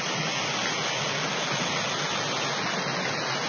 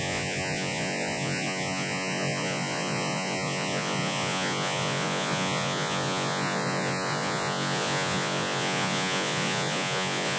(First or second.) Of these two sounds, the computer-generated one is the second